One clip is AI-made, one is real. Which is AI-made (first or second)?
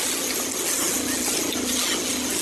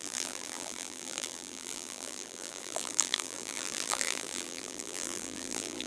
second